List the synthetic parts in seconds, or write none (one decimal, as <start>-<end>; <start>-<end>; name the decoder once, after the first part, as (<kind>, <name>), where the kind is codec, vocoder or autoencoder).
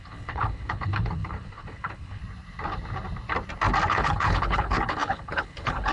0.0-2.2 (codec, HILCodec); 3.9-5.9